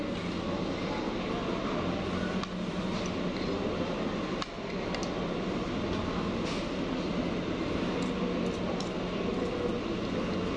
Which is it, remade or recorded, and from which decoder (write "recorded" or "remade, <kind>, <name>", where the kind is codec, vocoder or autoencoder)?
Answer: recorded